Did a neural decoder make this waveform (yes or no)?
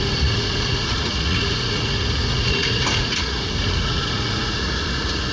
yes